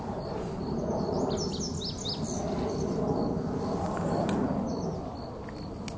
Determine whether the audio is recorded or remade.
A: recorded